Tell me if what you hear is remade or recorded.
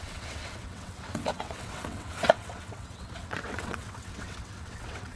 remade